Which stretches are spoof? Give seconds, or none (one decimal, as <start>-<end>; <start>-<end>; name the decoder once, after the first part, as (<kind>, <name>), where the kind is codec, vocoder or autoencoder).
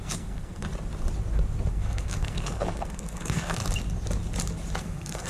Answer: 0.0-0.7 (codec, SNAC); 1.7-3.6; 4.8-5.3